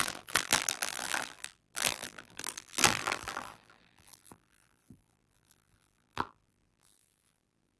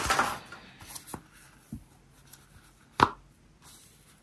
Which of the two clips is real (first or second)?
second